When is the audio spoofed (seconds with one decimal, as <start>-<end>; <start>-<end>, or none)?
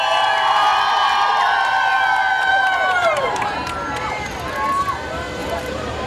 2.5-3.4; 5.4-6.1